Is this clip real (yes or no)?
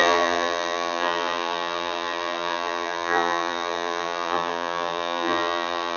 no